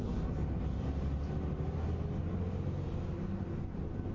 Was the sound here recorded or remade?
recorded